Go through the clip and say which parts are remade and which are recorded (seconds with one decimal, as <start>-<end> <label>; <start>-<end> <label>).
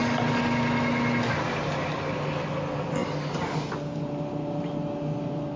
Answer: 0.0-5.6 recorded